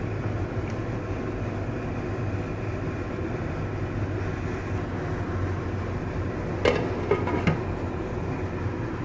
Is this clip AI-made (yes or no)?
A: no